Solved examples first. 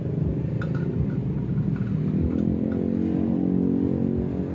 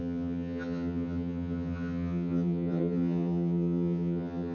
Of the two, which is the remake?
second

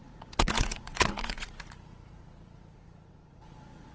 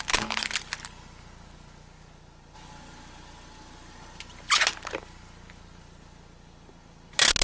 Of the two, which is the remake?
first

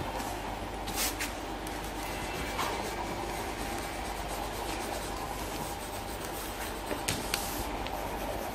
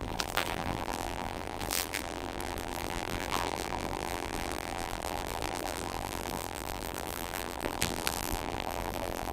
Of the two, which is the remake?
second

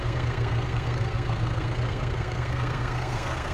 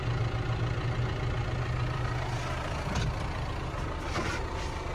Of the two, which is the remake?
first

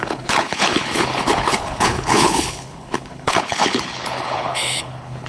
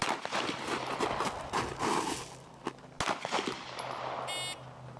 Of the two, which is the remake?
first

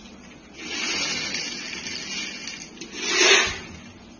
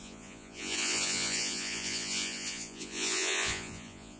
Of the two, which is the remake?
second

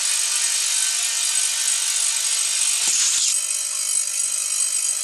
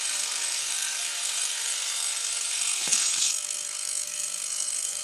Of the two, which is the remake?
second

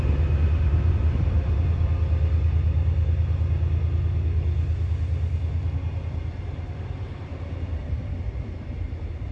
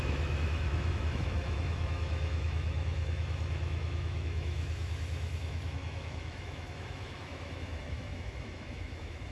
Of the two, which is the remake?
second